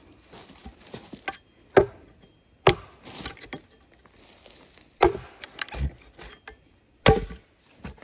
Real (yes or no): yes